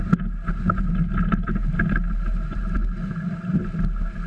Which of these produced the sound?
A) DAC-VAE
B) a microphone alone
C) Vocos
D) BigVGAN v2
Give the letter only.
B